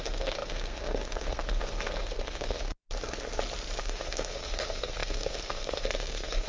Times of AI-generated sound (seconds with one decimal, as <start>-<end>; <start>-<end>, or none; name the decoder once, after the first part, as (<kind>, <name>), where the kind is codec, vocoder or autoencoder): 0.0-2.7 (codec, SNAC); 3.8-6.5